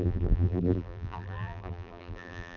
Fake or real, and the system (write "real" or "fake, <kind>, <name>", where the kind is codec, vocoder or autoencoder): fake, vocoder, BigVGAN v2